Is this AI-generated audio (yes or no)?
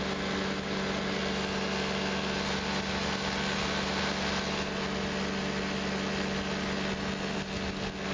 no